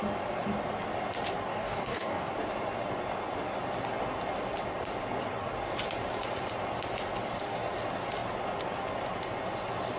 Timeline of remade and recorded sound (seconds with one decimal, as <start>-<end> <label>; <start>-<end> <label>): 0.0-1.5 recorded; 1.5-2.3 remade; 2.3-10.0 recorded